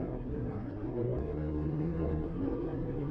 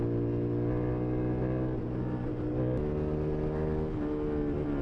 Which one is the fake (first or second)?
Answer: first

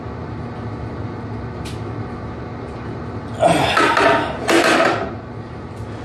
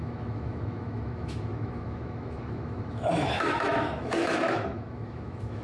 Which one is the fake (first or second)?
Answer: second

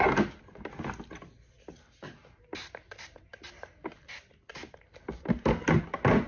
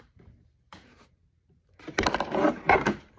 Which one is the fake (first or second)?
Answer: second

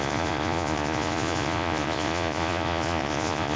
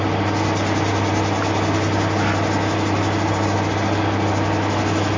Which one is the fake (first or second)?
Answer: first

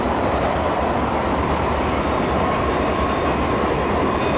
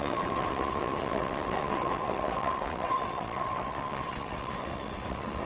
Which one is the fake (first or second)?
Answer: second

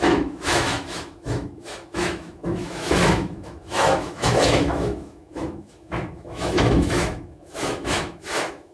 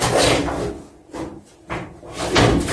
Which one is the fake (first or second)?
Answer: first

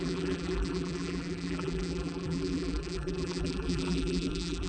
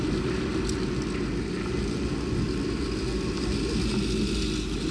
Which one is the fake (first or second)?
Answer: first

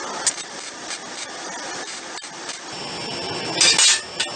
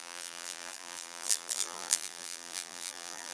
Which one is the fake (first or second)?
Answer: second